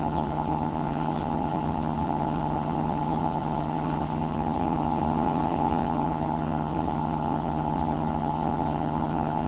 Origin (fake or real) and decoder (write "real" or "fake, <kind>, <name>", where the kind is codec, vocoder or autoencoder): fake, vocoder, HiFi-GAN